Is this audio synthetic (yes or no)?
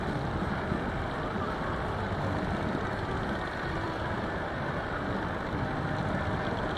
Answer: yes